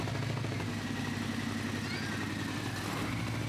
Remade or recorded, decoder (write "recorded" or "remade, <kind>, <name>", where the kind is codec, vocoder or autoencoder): recorded